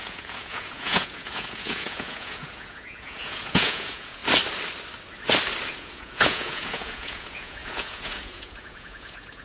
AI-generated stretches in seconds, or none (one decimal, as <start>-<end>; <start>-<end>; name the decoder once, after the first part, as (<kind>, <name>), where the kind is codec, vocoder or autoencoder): 0.0-4.2 (vocoder, Vocos); 5.7-9.4